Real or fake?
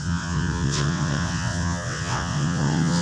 fake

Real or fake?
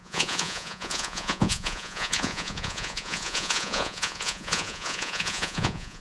fake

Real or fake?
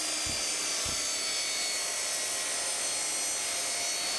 real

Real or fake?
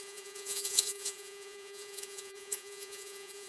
fake